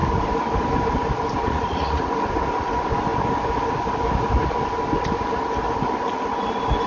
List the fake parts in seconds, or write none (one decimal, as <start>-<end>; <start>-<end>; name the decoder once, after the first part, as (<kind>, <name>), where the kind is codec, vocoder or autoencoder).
1.4-2.1 (vocoder, Vocos)